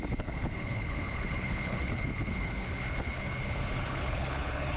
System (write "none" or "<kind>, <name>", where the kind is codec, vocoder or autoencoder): codec, HILCodec